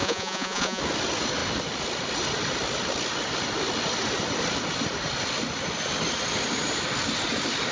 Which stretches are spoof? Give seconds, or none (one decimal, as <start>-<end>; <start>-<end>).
0.0-0.8